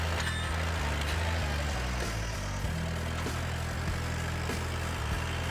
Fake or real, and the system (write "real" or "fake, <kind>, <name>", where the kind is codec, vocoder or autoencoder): real